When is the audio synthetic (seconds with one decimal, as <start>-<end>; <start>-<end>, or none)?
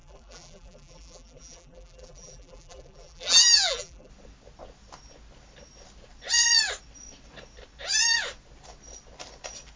0.0-4.1